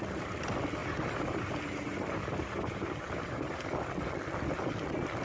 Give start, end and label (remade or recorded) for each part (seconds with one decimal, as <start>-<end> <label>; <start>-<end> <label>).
0.0-0.8 recorded; 0.8-3.9 remade; 3.9-5.2 recorded